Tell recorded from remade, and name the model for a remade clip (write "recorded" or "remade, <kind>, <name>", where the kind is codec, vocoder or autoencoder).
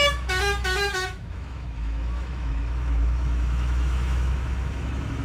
remade, autoencoder, DAC-VAE